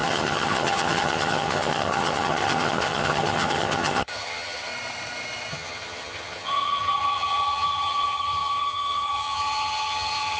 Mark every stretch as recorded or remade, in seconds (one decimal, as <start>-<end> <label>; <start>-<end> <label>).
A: 0.0-4.7 remade; 4.7-5.5 recorded; 5.5-10.4 remade